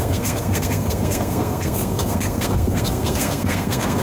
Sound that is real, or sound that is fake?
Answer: fake